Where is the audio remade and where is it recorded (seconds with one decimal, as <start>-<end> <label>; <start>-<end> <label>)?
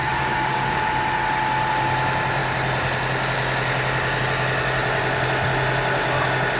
0.0-0.8 remade; 0.8-6.6 recorded